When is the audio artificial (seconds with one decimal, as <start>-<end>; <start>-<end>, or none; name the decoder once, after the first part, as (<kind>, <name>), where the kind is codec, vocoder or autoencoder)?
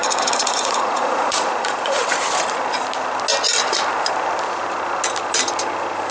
0.0-2.0 (vocoder, Vocos)